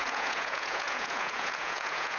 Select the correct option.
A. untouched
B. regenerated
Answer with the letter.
B